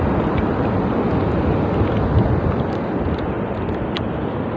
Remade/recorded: recorded